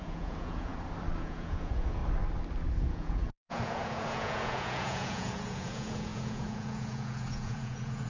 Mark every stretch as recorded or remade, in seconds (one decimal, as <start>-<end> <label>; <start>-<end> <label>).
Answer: 0.0-0.7 remade; 0.7-1.2 recorded; 1.2-2.0 remade; 2.0-2.9 recorded; 2.9-8.1 remade